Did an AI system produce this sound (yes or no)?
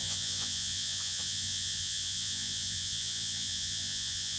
yes